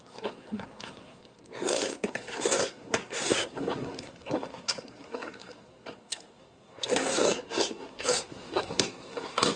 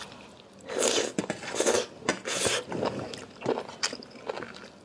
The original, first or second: second